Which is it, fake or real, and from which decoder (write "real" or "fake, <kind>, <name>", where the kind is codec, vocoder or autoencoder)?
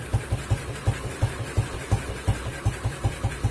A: real